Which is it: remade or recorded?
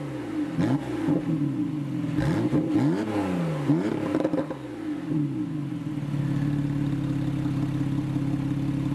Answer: recorded